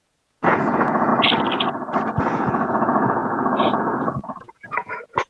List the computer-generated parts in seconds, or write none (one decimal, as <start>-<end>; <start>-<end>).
0.0-1.1; 2.2-5.3